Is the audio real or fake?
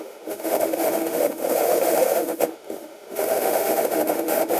fake